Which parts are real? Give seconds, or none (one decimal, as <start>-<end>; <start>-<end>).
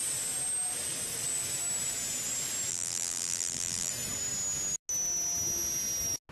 0.0-2.7; 3.9-6.3